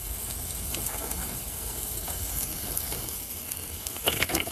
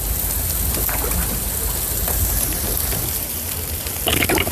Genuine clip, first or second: second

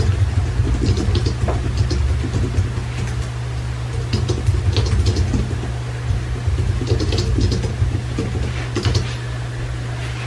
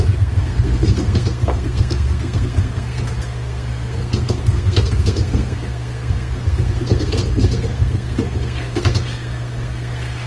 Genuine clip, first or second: first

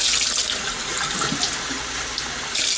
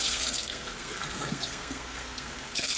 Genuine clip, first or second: first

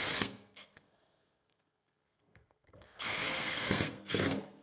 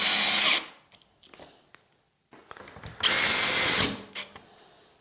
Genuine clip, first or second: second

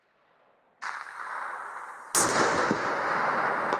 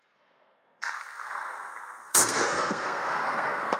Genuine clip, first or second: first